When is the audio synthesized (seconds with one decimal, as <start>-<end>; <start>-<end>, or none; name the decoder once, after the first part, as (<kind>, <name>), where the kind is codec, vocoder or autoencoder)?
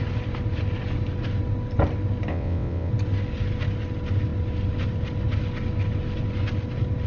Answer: 2.3-2.9 (vocoder, WaveNeXt)